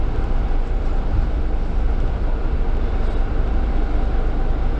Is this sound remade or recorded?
recorded